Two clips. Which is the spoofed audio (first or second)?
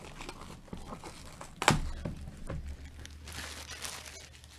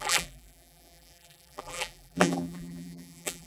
second